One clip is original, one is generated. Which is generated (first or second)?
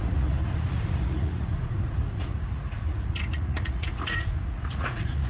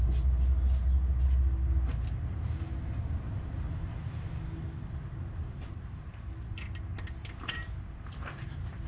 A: first